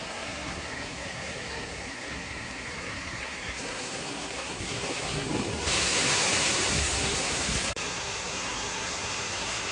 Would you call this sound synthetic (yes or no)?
yes